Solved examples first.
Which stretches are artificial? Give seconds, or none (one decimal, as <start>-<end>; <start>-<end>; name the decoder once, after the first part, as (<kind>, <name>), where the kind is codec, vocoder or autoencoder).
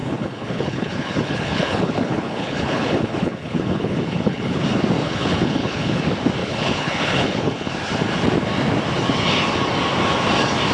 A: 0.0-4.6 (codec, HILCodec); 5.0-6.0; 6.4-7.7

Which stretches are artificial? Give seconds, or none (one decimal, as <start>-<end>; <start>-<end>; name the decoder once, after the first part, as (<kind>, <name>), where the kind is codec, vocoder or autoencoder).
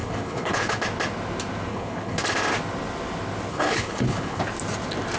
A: 0.0-0.8 (codec, HILCodec); 1.7-2.2; 3.5-4.4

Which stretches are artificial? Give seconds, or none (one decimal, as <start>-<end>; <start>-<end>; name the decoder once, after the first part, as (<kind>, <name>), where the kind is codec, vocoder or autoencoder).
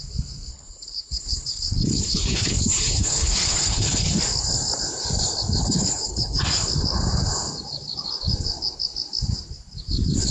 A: 0.5-4.2 (codec, HILCodec); 5.6-6.4